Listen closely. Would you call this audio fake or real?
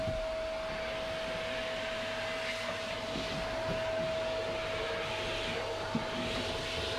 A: real